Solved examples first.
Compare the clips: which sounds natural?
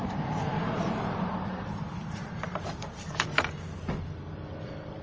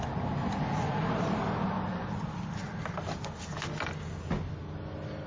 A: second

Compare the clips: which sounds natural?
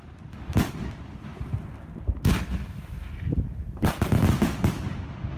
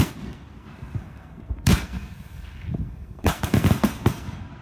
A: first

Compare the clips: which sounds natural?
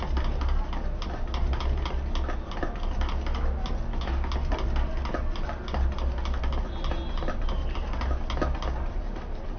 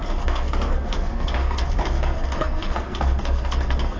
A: first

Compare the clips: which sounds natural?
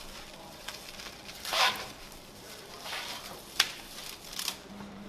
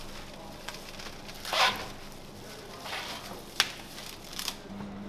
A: second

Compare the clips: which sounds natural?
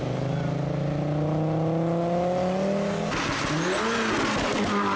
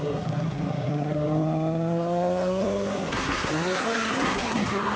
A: first